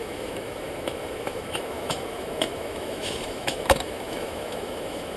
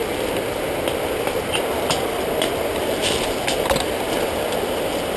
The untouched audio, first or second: second